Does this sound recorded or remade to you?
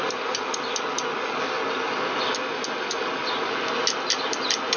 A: recorded